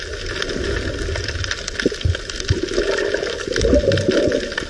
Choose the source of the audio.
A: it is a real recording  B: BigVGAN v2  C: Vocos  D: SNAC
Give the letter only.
A